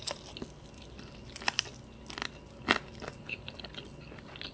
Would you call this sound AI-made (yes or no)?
no